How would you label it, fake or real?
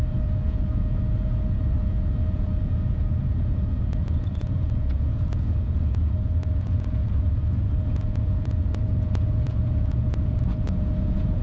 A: fake